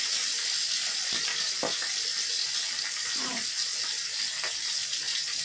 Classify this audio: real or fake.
real